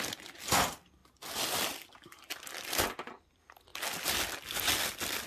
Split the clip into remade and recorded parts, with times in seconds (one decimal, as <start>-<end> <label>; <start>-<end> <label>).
0.0-5.3 recorded